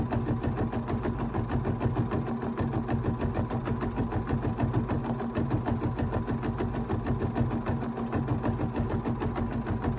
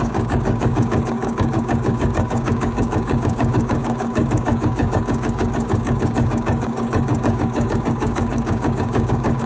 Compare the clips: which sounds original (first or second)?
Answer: first